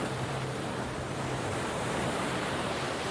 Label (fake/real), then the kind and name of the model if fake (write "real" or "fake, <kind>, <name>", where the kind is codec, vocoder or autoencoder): fake, vocoder, BigVGAN v2